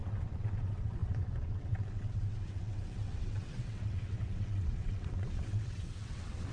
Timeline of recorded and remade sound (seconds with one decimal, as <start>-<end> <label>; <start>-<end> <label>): 0.0-6.5 remade